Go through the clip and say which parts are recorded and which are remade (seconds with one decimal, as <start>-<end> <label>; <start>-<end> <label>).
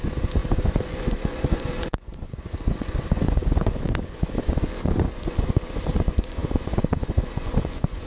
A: 0.0-8.1 remade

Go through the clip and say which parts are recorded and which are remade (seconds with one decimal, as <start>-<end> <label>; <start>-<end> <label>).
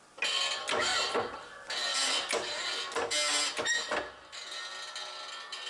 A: 0.0-5.7 recorded